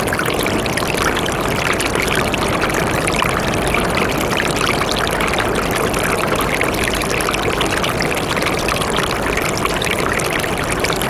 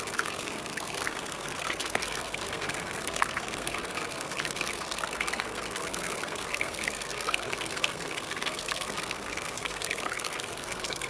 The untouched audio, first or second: first